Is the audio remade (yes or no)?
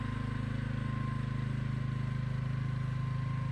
no